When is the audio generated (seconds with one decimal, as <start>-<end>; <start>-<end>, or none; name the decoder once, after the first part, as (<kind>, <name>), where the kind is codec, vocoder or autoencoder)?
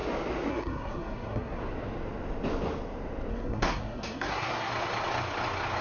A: 0.5-1.6 (codec, SNAC); 3.3-4.7